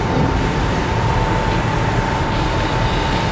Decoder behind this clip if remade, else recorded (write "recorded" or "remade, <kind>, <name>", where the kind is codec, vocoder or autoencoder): remade, vocoder, BigVGAN v2